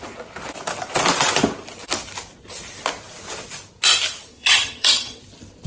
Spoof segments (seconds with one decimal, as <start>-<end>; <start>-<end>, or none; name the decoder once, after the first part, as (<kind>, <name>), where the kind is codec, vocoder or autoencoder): 4.3-5.2 (vocoder, HiFi-GAN)